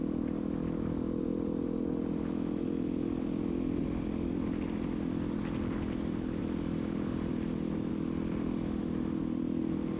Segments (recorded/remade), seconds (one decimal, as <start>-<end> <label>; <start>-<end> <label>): 0.0-6.4 recorded; 6.4-7.9 remade; 7.9-10.0 recorded